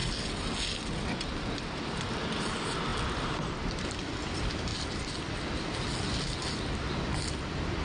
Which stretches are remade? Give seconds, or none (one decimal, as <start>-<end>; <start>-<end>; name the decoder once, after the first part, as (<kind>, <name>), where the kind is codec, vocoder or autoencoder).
0.8-2.9 (vocoder, BigVGAN v2); 3.6-4.7